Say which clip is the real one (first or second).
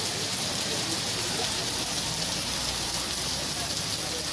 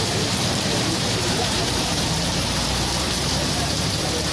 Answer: first